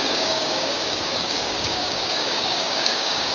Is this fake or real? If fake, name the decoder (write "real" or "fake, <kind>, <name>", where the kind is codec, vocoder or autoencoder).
fake, codec, DAC